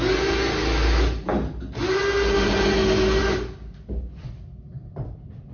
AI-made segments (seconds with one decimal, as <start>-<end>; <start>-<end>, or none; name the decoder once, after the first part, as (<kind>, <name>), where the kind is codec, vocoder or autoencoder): none